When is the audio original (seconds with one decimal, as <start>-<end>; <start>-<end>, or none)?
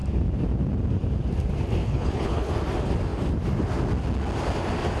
0.0-1.8; 2.5-5.0